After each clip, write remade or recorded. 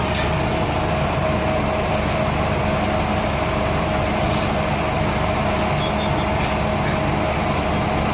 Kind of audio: recorded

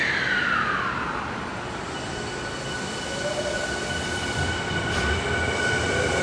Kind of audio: recorded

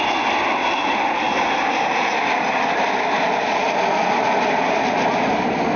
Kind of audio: recorded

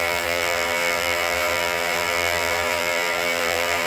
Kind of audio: remade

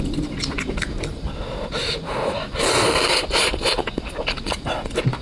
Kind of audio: recorded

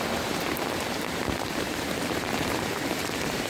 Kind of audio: remade